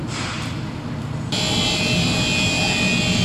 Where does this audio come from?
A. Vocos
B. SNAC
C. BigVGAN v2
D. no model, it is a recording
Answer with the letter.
D